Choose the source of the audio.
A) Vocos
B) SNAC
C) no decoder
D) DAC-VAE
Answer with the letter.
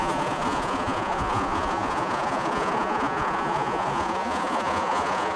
A